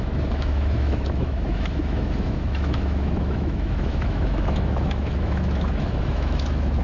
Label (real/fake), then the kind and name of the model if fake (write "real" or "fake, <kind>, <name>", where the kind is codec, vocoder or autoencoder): fake, autoencoder, DAC-VAE